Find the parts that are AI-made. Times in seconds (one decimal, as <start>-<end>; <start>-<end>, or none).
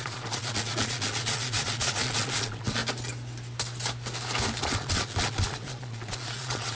0.0-2.8; 4.6-6.7